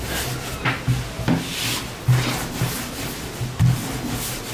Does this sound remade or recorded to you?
recorded